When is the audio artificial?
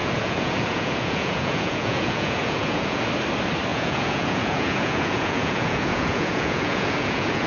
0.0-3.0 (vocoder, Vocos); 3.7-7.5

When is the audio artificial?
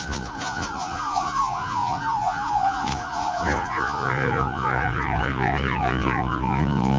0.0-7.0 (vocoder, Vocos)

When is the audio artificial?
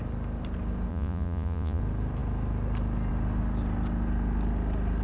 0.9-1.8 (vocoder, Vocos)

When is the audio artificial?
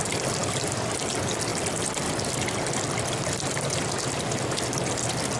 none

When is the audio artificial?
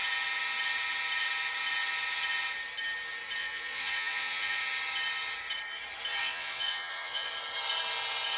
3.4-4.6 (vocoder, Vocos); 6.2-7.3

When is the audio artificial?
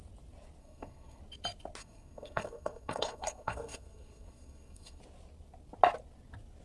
0.6-1.2 (codec, SNAC); 1.8-5.0